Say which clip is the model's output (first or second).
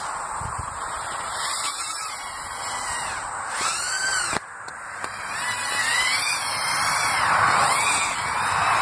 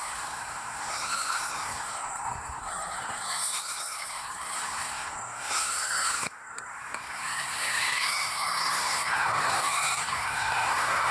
second